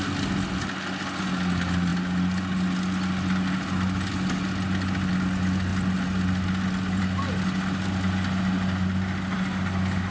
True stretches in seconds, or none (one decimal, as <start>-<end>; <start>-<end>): 0.0-10.1